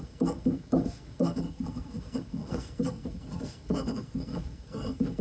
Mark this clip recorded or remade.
remade